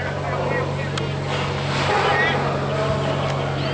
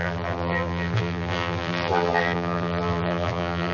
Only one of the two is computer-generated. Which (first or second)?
second